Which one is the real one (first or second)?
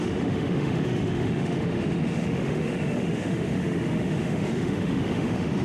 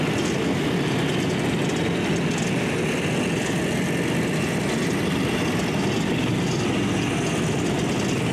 second